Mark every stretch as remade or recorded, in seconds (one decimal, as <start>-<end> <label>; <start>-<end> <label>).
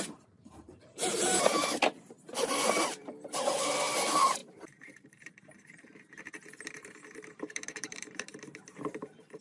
0.0-9.4 remade